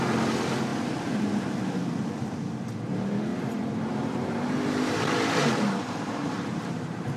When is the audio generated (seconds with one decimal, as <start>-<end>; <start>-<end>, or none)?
0.7-1.2; 3.3-7.2